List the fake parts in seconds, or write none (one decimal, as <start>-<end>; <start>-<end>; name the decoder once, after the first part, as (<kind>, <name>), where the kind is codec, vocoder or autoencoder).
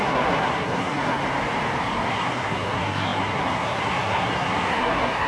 0.0-1.2 (codec, SNAC); 1.8-5.3